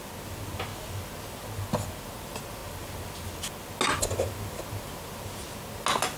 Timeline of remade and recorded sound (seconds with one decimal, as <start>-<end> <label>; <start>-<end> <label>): 0.0-6.2 recorded